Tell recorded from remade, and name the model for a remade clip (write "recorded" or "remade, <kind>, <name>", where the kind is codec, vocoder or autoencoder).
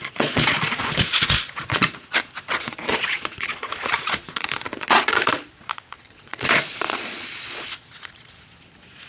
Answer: remade, vocoder, Vocos